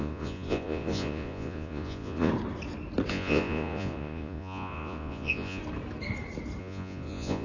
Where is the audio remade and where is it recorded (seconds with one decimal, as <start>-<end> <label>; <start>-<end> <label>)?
0.0-2.3 remade; 2.3-3.1 recorded; 3.1-5.6 remade; 5.6-6.6 recorded; 6.6-7.4 remade